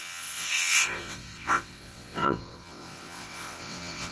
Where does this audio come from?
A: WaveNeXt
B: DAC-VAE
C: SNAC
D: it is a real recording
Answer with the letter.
A